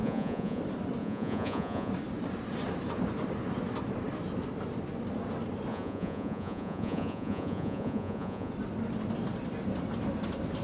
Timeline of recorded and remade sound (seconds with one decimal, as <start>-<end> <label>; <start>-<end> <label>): 0.0-0.6 remade; 0.6-1.0 recorded; 1.0-1.9 remade; 1.9-5.7 recorded; 5.7-8.5 remade; 8.5-10.6 recorded